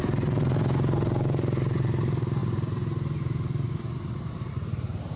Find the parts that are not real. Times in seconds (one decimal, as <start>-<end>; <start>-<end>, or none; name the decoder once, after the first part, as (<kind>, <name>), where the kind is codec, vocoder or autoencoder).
2.4-5.2 (vocoder, BigVGAN v2)